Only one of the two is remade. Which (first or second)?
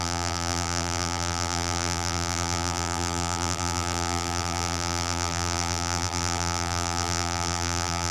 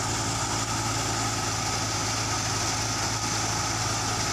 first